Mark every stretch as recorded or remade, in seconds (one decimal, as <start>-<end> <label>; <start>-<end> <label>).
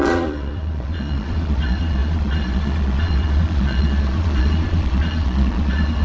0.0-6.0 remade